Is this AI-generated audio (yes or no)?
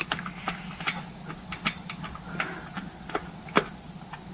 no